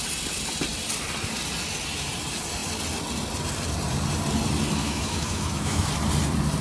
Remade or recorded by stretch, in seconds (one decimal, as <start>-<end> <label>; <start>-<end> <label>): 0.0-4.8 recorded; 4.8-5.9 remade; 5.9-6.6 recorded